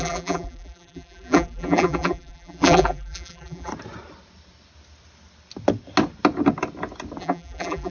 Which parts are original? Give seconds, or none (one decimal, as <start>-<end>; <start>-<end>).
3.7-7.2